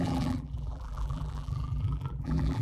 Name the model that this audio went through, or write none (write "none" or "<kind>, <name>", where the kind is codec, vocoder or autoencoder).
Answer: vocoder, BigVGAN v2